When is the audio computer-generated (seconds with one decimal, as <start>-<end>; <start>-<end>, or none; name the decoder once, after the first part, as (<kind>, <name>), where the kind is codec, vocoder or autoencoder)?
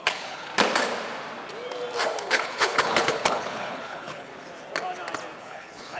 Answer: 0.0-0.5 (codec, HILCodec); 2.2-4.3; 5.4-6.0